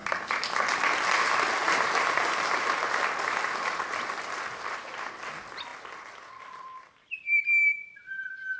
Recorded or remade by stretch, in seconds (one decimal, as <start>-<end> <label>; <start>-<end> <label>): 0.0-8.6 recorded